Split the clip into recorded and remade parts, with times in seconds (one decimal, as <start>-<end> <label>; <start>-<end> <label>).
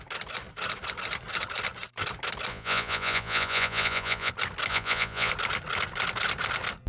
0.0-2.5 recorded; 2.5-4.3 remade; 4.3-4.7 recorded; 4.7-5.3 remade; 5.3-6.9 recorded